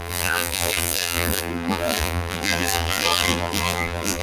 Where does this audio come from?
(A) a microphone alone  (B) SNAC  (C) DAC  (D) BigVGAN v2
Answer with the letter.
D